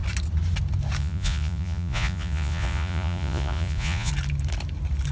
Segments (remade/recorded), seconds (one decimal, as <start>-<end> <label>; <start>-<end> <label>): 0.0-1.0 recorded; 1.0-4.1 remade; 4.1-5.1 recorded